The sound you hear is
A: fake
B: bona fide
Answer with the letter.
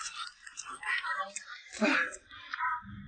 B